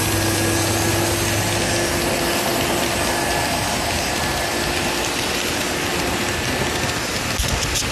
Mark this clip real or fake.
real